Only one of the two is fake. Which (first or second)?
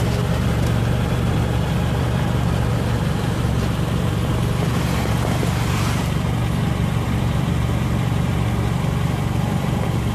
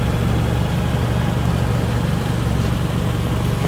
first